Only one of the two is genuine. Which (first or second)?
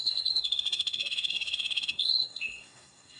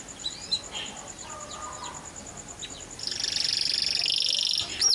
second